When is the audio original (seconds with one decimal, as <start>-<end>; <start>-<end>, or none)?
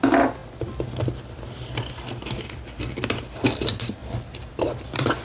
0.0-4.0